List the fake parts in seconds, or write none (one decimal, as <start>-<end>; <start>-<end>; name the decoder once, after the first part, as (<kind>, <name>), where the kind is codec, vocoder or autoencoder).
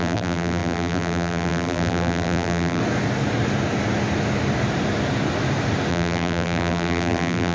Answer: 0.0-2.8 (vocoder, BigVGAN v2); 5.9-7.5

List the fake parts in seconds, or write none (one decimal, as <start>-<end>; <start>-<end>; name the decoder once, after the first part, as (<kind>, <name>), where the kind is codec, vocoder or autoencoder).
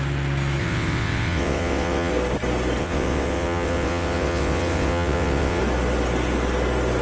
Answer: 0.6-2.1 (vocoder, WaveNeXt); 2.8-5.6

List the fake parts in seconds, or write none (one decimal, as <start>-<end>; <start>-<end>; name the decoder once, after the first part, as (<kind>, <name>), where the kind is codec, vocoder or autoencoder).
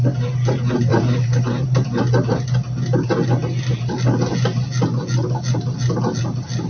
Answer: 0.9-2.0 (vocoder, BigVGAN v2)